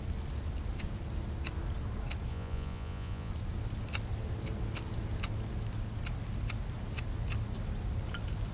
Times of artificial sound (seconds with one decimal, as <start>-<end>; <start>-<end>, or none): 2.3-3.3